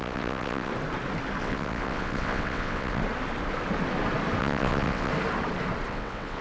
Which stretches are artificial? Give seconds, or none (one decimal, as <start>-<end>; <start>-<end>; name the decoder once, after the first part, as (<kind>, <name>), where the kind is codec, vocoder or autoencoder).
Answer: 0.0-0.7 (vocoder, WaveNeXt); 1.4-3.0; 4.4-5.1; 5.9-6.4